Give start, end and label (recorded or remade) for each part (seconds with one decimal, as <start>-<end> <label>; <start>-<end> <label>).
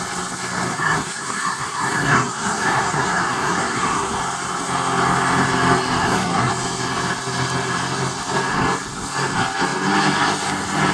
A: 0.0-0.7 recorded; 0.7-4.2 remade; 4.2-6.0 recorded; 6.0-6.5 remade; 6.5-10.9 recorded